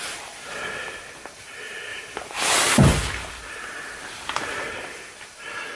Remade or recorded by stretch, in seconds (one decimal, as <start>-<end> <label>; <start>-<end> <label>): 0.0-1.9 recorded; 1.9-2.4 remade; 2.4-5.8 recorded